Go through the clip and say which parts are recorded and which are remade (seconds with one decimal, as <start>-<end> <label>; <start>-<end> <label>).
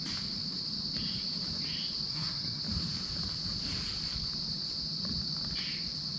0.0-2.1 recorded; 2.1-2.6 remade; 2.6-6.2 recorded